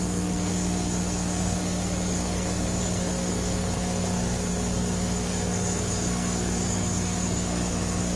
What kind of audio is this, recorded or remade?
remade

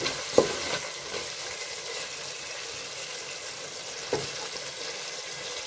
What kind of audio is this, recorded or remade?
recorded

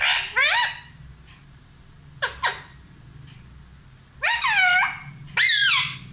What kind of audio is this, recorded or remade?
recorded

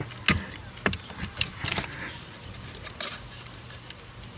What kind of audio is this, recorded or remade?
recorded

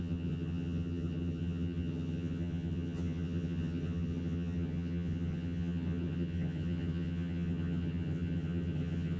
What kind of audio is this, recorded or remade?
remade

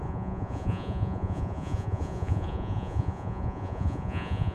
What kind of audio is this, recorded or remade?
remade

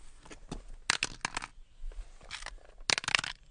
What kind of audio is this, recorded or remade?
recorded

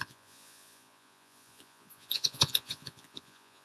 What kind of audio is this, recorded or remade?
remade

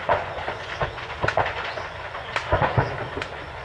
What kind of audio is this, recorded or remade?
remade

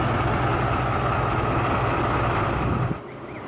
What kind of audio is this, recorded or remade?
recorded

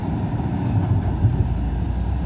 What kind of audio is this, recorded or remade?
remade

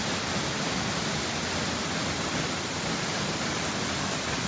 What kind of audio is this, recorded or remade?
recorded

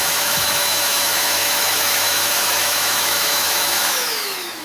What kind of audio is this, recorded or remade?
remade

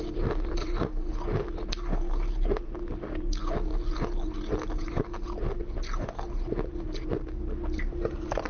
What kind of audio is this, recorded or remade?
recorded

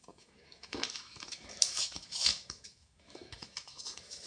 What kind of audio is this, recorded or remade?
remade